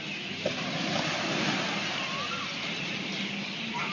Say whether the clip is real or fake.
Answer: real